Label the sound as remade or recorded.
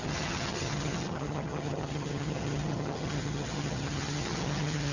remade